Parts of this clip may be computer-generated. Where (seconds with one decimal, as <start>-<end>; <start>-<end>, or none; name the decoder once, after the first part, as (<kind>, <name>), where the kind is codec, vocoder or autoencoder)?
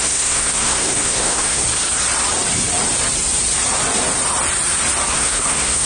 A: 0.0-1.6 (codec, SNAC); 5.1-5.9